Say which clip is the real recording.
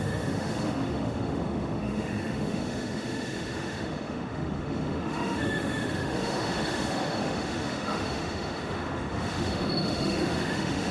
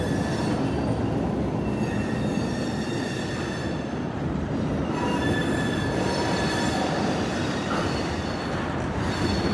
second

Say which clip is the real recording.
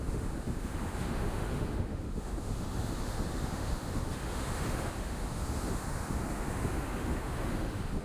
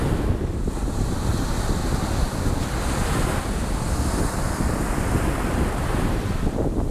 second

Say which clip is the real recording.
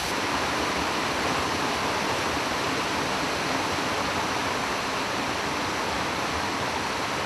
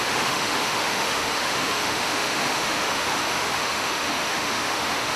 first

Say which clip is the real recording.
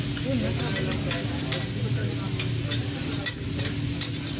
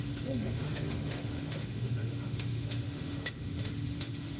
first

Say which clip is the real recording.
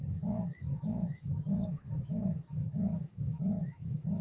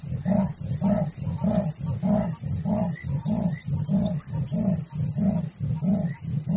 second